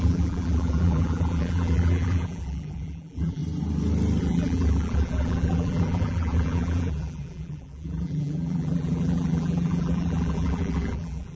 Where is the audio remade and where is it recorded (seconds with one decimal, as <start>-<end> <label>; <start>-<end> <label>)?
0.0-3.4 remade; 3.4-4.2 recorded; 4.2-11.4 remade